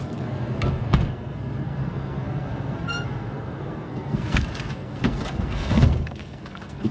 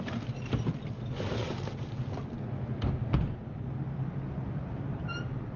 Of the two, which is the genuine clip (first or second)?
second